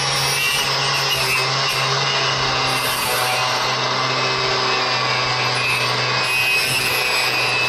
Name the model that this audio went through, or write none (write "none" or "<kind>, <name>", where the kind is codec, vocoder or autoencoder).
none